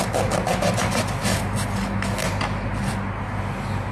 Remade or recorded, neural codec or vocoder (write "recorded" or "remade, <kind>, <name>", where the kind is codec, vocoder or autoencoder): recorded